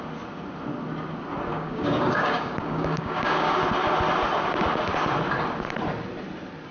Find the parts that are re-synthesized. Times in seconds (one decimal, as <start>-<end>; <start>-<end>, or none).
1.5-3.6